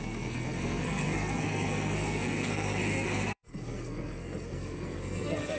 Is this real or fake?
fake